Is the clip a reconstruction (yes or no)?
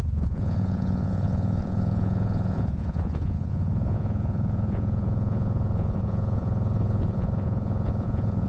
yes